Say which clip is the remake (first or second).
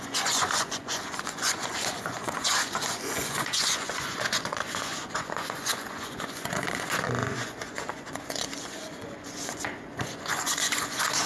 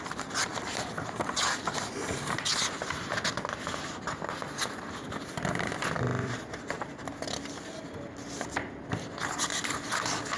first